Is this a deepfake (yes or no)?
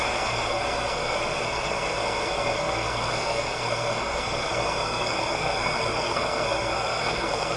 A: yes